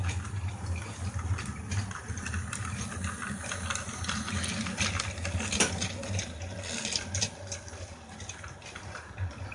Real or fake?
real